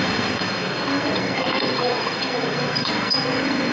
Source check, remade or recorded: remade